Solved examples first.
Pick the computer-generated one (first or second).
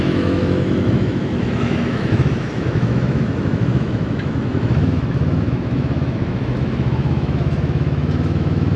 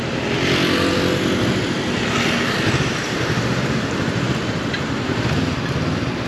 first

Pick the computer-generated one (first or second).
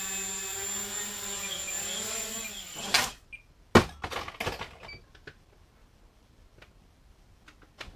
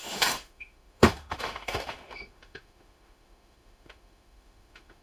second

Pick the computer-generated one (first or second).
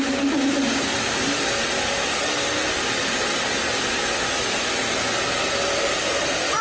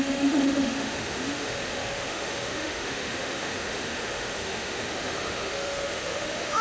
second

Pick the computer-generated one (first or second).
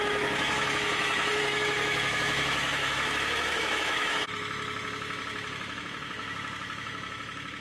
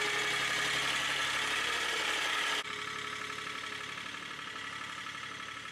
first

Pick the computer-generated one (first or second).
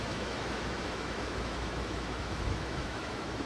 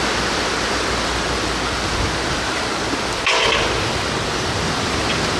first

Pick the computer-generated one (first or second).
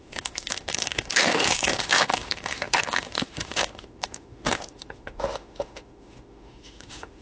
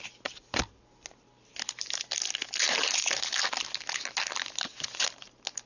first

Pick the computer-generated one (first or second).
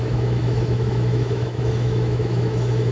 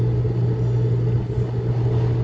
first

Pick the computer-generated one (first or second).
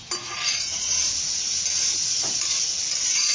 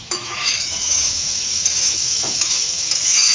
second